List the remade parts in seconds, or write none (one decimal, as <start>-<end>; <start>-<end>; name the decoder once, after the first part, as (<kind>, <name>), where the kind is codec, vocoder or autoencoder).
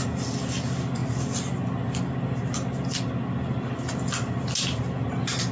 none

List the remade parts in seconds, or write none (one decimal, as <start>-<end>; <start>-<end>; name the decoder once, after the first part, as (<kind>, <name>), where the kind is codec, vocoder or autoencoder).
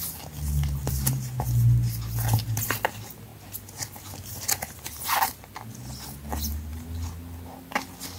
none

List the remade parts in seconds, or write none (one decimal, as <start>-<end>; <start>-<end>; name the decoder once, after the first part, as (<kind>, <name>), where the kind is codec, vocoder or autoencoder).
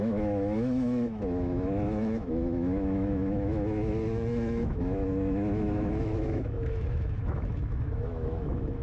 0.0-8.8 (autoencoder, DAC-VAE)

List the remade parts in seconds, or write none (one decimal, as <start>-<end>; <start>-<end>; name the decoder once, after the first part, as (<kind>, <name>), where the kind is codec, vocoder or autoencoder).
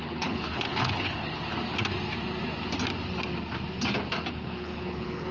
0.0-1.4 (codec, HILCodec); 4.3-5.3